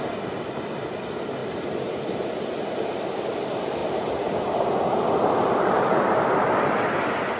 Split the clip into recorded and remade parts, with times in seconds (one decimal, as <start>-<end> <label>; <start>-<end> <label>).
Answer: 0.0-3.8 recorded; 3.8-4.8 remade; 4.8-7.4 recorded